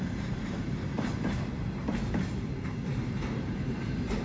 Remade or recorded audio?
remade